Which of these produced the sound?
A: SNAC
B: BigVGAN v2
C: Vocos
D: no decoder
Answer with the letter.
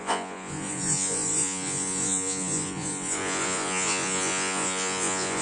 C